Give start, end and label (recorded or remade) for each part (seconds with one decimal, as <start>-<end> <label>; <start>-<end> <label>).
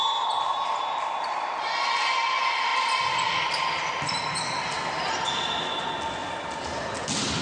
0.0-7.4 recorded